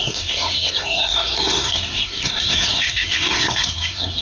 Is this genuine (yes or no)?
no